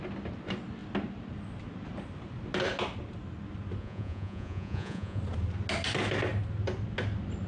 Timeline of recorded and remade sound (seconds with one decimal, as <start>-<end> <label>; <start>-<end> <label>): 0.0-3.8 recorded; 3.8-5.2 remade; 5.2-7.5 recorded